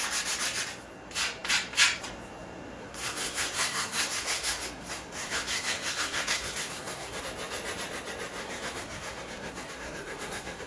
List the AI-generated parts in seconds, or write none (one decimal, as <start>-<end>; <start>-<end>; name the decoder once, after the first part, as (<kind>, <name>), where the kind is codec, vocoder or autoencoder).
2.8-7.2 (codec, SNAC); 8.4-10.7